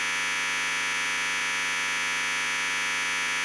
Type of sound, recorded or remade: recorded